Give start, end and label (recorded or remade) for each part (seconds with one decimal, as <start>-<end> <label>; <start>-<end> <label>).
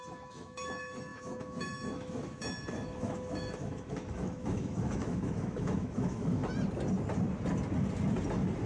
0.0-6.4 remade; 6.4-8.7 recorded